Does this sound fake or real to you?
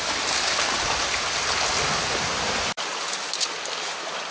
real